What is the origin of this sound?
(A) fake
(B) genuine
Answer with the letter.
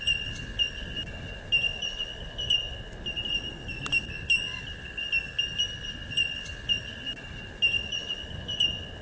B